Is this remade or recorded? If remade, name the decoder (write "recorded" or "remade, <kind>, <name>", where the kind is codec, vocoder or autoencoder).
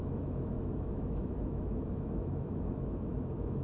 remade, autoencoder, DAC-VAE